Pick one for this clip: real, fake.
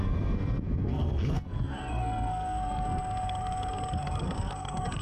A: fake